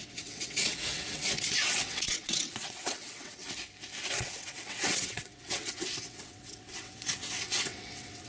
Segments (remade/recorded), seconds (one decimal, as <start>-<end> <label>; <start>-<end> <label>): 0.0-3.4 remade; 3.4-4.0 recorded; 4.0-8.3 remade